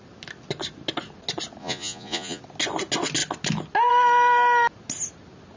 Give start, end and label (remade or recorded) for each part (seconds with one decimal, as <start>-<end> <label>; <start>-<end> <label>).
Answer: 0.0-1.6 recorded; 1.6-2.4 remade; 2.4-5.6 recorded